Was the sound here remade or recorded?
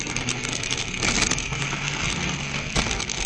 remade